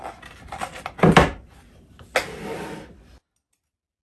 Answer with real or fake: real